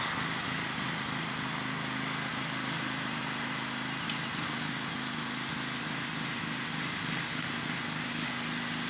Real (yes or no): yes